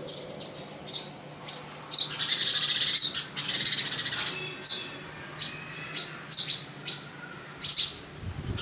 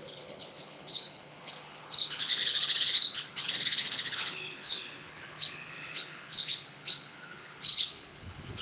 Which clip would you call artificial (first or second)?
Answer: second